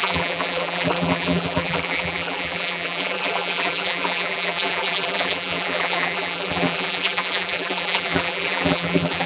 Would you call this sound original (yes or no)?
no